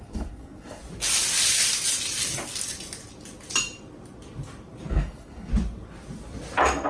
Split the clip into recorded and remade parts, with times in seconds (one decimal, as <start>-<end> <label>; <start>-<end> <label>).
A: 0.0-0.8 remade; 0.8-4.9 recorded; 4.9-5.5 remade; 5.5-6.9 recorded